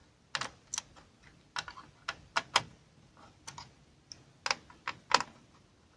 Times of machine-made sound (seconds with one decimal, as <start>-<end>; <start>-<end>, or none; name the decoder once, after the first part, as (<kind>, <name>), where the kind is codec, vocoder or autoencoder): none